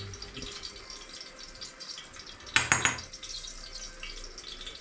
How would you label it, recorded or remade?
recorded